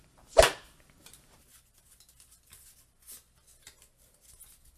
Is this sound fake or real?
real